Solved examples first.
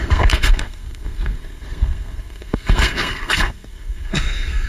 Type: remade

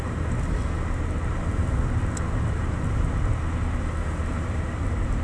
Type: recorded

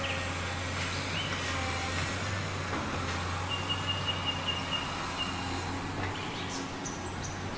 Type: recorded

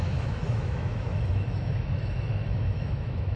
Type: remade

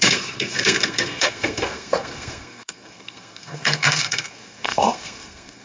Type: remade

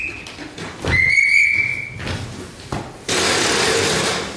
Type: recorded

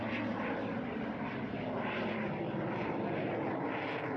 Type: recorded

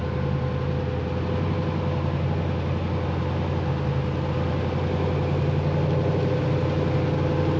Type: recorded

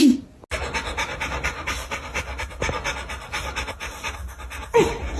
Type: recorded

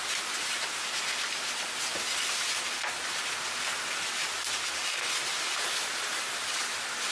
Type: recorded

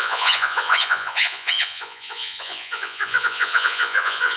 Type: remade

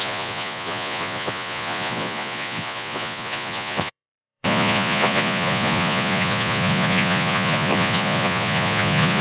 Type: remade